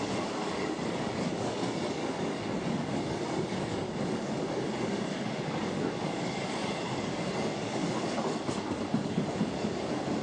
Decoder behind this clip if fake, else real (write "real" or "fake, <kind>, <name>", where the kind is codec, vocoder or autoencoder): fake, codec, DAC